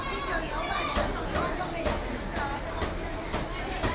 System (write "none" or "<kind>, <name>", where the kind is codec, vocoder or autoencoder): none